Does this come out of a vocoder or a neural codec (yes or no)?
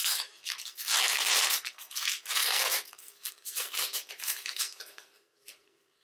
yes